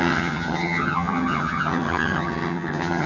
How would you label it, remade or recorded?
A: remade